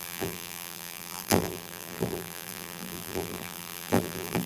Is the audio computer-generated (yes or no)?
yes